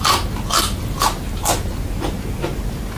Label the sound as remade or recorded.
recorded